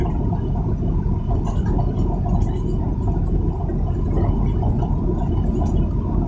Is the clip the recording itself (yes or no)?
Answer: yes